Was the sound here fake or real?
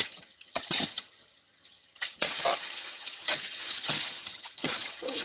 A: fake